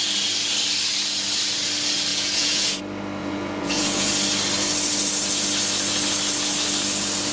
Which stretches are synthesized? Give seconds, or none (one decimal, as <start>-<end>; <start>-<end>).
2.1-2.8; 3.2-4.1